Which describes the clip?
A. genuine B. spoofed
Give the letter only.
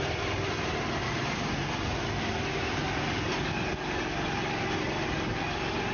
A